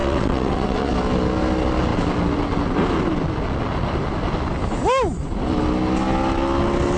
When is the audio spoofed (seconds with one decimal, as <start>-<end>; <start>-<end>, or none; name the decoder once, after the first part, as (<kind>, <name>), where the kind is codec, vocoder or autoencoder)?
0.0-0.9 (vocoder, WaveNeXt)